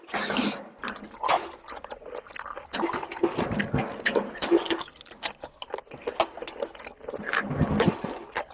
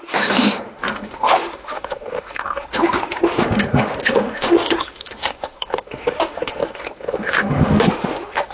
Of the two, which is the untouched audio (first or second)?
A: first